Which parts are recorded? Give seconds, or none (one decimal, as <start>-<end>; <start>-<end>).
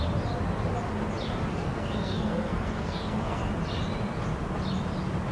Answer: 0.0-1.5; 3.5-5.3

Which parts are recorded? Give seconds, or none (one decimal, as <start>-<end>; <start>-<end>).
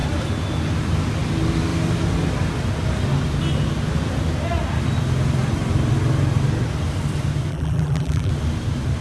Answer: 0.0-7.5; 8.3-9.0